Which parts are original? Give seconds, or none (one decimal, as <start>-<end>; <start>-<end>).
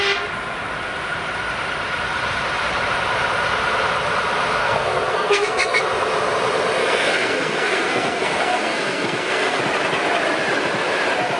0.0-4.6; 5.8-6.8; 9.6-11.4